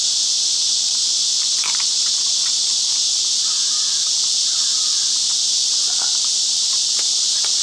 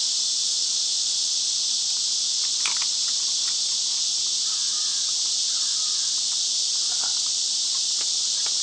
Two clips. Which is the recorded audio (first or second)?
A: second